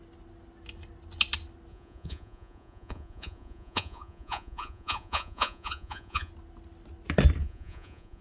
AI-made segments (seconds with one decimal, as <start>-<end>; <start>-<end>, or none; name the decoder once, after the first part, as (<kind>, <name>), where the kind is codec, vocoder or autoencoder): 1.7-6.3 (vocoder, Vocos); 7.4-8.2